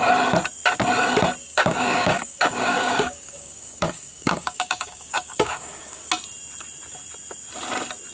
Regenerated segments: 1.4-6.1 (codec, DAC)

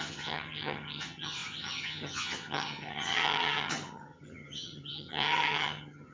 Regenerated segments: 0.0-6.1 (vocoder, HiFi-GAN)

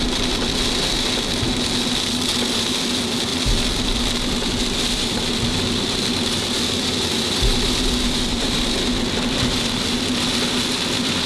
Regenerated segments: none

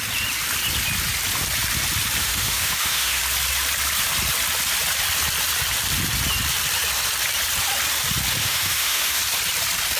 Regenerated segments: 2.2-3.2 (autoencoder, DAC-VAE); 8.4-9.2

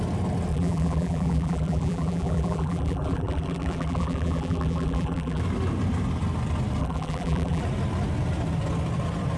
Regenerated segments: 0.5-5.4 (vocoder, BigVGAN v2); 6.8-7.6

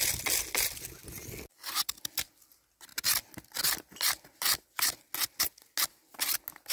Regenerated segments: none

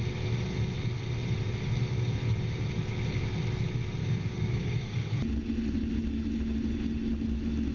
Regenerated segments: 4.0-5.2 (codec, DAC)